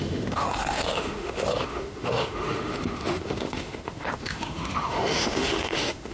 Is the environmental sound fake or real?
fake